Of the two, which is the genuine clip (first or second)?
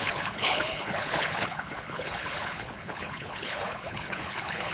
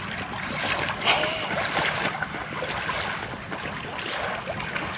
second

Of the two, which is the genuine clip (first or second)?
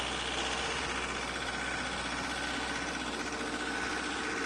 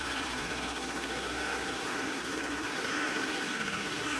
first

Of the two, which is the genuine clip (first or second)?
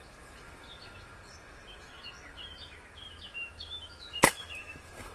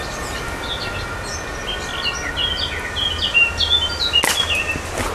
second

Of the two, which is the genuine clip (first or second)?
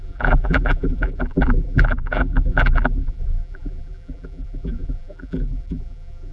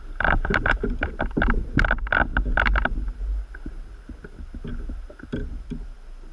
second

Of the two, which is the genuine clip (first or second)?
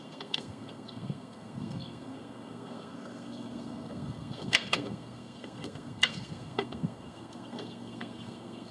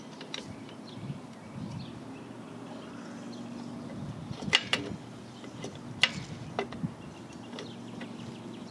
second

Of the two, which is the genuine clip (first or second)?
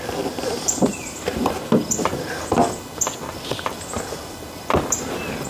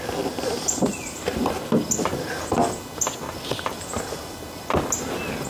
second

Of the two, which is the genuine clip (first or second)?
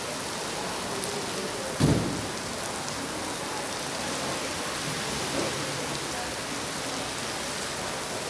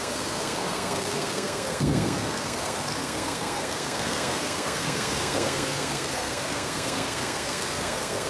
first